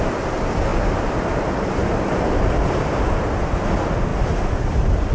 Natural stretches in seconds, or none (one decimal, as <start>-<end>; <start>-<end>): 0.0-0.7; 3.1-5.1